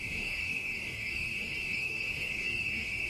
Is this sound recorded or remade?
remade